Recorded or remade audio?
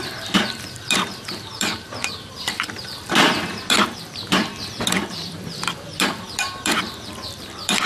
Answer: remade